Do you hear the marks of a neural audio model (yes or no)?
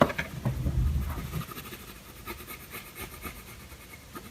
no